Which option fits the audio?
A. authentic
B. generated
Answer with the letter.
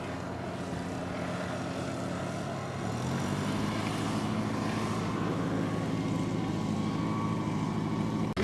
A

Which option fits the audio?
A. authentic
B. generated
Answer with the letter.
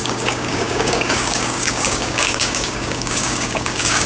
B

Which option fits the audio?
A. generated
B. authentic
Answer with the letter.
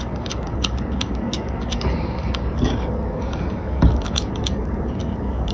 A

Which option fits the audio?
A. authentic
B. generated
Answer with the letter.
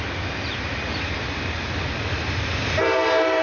A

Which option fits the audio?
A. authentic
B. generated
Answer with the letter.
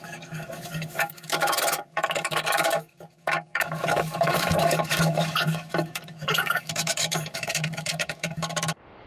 B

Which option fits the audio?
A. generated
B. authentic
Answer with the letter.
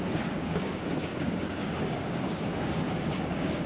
A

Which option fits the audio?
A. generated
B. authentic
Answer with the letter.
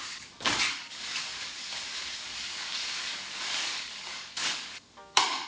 A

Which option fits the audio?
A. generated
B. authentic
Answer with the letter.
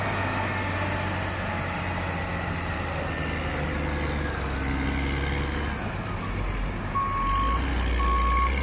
B